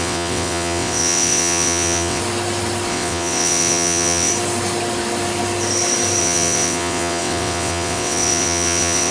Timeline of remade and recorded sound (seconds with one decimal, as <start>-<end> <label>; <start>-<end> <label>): 0.0-2.2 remade; 2.2-2.9 recorded; 2.9-4.3 remade; 4.3-6.2 recorded; 6.2-9.1 remade